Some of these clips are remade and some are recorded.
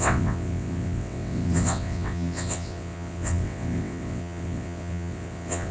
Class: remade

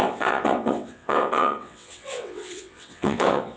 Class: remade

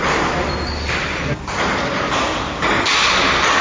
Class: recorded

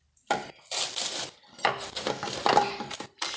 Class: recorded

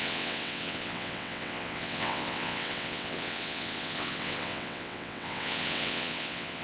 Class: remade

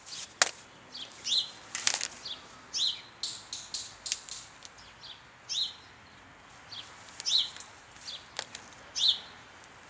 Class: recorded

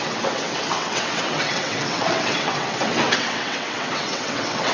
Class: remade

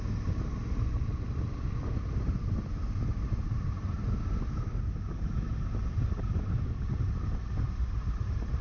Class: recorded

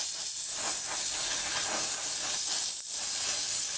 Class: recorded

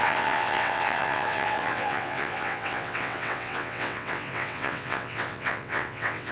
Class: remade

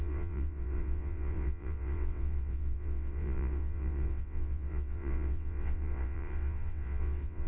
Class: remade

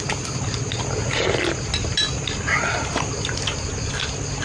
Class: recorded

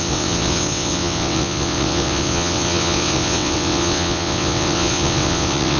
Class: remade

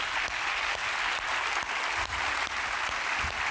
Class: recorded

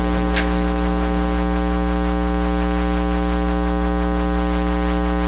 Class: recorded